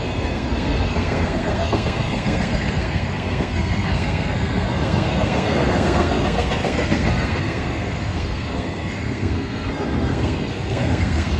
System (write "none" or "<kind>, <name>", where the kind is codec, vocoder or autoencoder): codec, SNAC